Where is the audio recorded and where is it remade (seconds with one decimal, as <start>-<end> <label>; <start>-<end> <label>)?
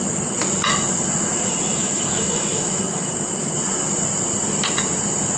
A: 0.0-1.7 recorded; 1.7-3.1 remade; 3.1-5.4 recorded